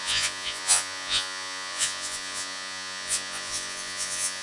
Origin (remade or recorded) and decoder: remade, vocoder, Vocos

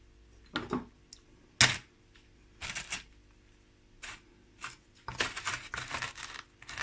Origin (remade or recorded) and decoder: recorded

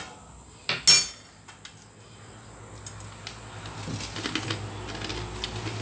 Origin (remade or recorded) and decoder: recorded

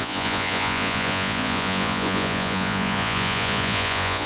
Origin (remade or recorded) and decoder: remade, vocoder, Vocos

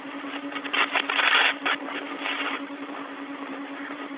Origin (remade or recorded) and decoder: remade, vocoder, BigVGAN v2